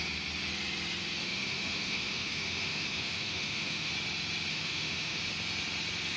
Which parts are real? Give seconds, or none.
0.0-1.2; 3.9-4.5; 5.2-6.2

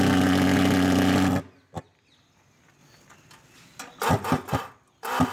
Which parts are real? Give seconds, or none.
0.0-5.3

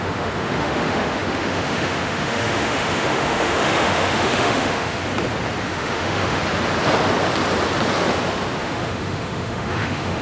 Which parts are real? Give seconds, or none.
5.0-5.6; 6.4-8.6

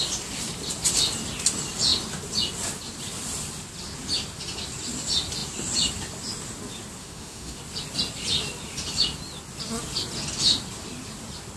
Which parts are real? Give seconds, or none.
0.0-7.0; 7.6-11.6

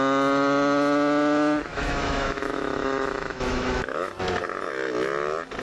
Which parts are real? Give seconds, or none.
0.0-1.7; 4.1-5.6